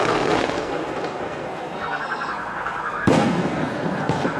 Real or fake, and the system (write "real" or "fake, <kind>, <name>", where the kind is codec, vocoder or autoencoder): fake, codec, SNAC